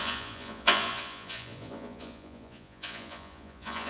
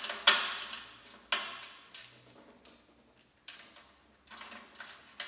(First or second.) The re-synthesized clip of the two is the first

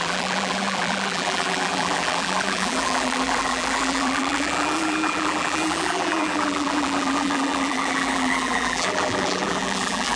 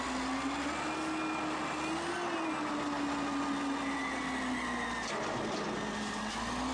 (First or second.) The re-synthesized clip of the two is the first